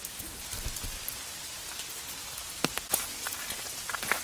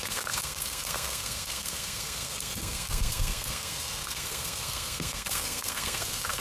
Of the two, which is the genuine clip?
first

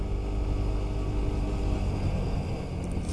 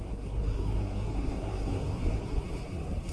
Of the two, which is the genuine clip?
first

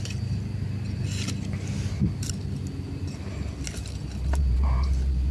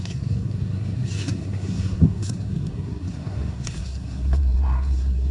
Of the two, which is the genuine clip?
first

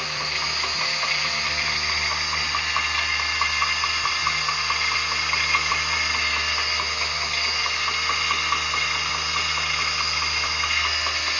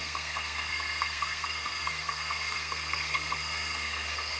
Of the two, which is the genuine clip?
first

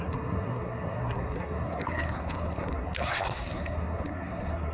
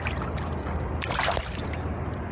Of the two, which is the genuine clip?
second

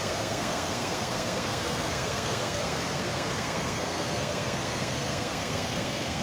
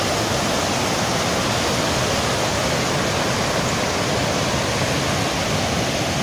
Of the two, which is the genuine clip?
second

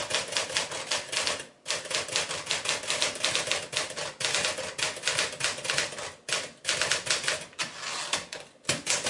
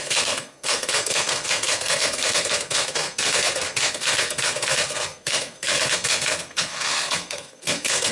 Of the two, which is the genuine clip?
first